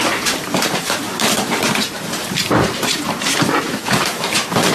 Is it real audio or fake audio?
fake